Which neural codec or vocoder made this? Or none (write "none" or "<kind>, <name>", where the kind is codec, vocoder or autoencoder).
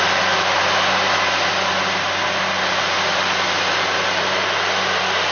none